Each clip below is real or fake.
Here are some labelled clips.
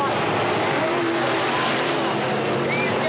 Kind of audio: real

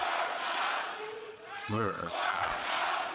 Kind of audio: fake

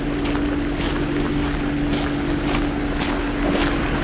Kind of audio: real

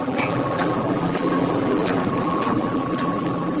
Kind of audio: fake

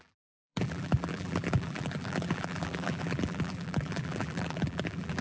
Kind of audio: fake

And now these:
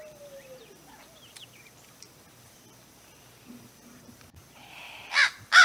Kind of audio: fake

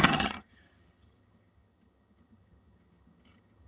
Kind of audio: fake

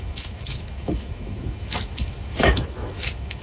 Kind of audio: fake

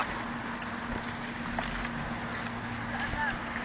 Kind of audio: real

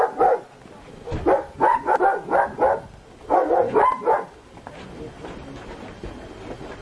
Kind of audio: real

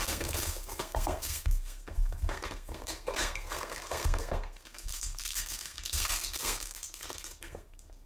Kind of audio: fake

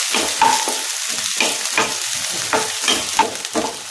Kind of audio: real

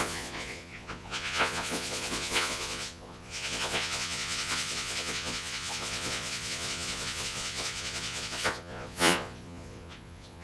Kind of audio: fake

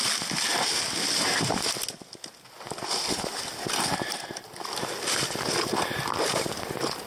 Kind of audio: real